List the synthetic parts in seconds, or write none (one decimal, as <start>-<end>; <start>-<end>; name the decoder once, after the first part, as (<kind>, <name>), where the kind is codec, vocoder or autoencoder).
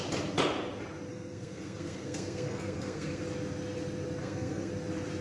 1.1-3.2 (codec, SNAC); 4.2-4.7